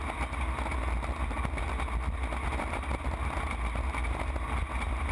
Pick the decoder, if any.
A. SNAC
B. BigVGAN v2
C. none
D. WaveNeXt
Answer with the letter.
C